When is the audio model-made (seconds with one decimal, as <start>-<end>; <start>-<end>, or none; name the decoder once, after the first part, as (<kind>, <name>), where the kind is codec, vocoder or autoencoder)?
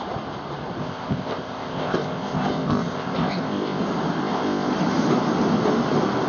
0.8-3.8 (codec, ZipCodec); 4.2-4.7